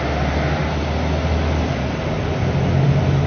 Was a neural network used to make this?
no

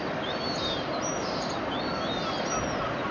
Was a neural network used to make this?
no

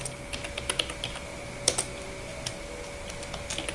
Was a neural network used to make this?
no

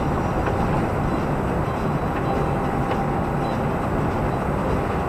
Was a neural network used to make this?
no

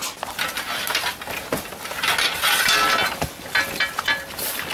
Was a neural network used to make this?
no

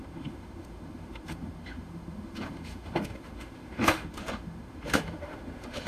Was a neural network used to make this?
yes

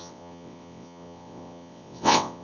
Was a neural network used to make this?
yes